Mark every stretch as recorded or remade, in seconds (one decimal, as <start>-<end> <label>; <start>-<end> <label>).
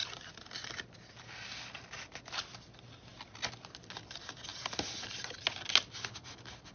0.0-0.7 remade; 0.7-4.5 recorded; 4.5-5.4 remade; 5.4-6.7 recorded